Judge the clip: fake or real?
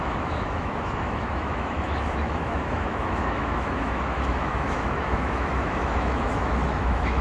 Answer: fake